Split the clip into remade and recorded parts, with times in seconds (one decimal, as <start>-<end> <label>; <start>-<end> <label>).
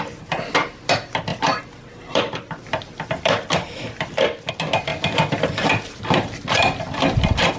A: 0.0-1.3 recorded; 1.3-4.5 remade; 4.5-4.9 recorded; 4.9-7.6 remade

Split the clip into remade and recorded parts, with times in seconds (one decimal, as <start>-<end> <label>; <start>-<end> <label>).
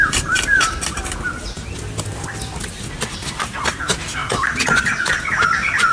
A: 0.0-5.9 recorded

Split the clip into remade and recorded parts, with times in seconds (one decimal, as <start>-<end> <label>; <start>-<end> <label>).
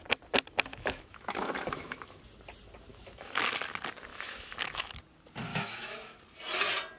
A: 0.0-0.7 recorded; 0.7-2.2 remade; 2.2-2.9 recorded; 2.9-3.5 remade; 3.5-4.1 recorded; 4.1-4.9 remade; 4.9-5.5 recorded; 5.5-6.2 remade; 6.2-7.0 recorded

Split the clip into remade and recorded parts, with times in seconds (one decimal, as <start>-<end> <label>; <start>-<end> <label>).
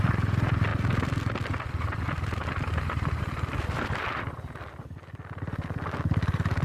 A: 0.0-6.6 recorded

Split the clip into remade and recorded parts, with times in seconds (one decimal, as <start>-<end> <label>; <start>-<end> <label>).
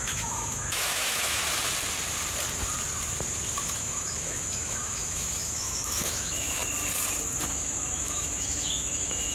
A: 0.0-1.4 remade; 1.4-3.6 recorded; 3.6-6.6 remade; 6.6-7.5 recorded; 7.5-9.3 remade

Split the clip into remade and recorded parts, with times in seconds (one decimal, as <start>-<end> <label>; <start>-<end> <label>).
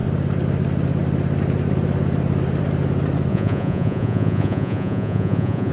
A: 0.0-3.3 recorded; 3.3-5.7 remade